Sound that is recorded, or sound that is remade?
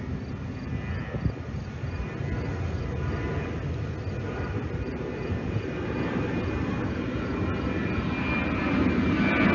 recorded